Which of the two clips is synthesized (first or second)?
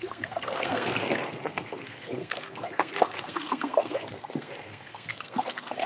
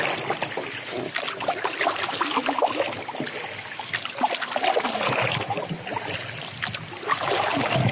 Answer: first